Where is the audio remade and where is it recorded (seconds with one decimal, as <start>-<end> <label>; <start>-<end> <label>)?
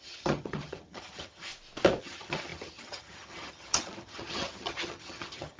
0.0-1.5 remade; 1.5-2.0 recorded; 2.0-5.6 remade